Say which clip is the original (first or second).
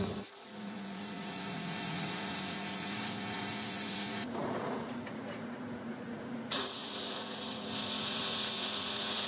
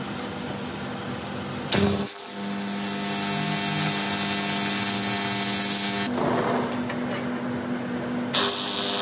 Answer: second